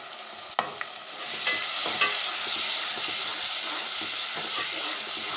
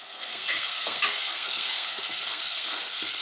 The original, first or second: first